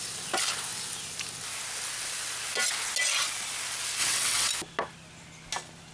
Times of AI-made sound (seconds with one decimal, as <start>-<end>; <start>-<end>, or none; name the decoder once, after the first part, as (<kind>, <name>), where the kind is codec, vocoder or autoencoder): 4.0-4.5 (vocoder, WaveNeXt)